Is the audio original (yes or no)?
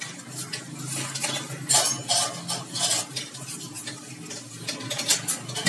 yes